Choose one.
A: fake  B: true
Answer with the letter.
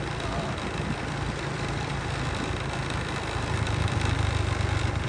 A